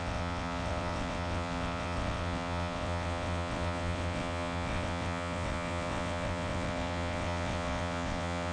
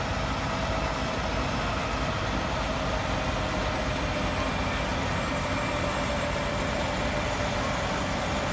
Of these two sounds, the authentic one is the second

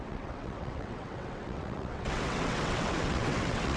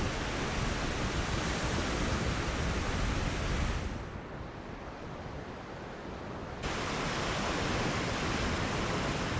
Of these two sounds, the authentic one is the second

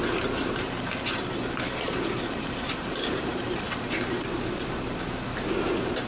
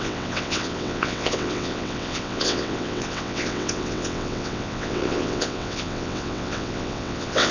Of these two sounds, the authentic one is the first